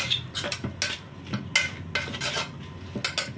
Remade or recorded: recorded